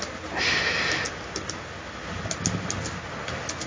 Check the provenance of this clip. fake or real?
real